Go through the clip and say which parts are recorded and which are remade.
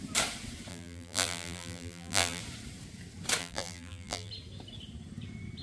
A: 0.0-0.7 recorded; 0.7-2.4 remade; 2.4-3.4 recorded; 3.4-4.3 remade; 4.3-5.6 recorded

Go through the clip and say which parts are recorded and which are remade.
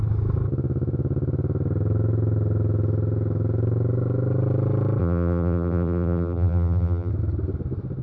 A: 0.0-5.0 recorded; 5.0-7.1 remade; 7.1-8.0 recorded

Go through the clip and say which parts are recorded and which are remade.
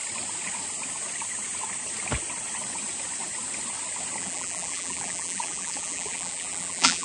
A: 0.0-4.2 recorded; 4.2-7.0 remade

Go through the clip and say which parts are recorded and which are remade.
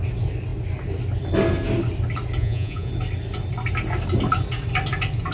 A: 0.0-2.4 recorded; 2.4-2.9 remade; 2.9-5.3 recorded